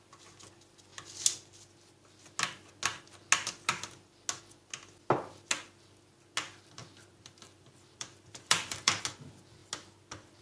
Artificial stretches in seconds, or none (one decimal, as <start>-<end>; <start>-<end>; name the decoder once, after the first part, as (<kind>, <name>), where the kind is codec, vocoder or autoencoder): 6.8-9.0 (vocoder, BigVGAN v2)